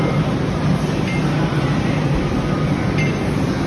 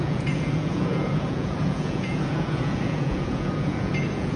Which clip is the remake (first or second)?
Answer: second